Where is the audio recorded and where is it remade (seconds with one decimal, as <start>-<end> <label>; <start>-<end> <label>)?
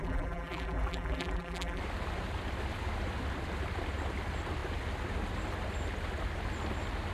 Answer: 0.0-1.8 remade; 1.8-7.1 recorded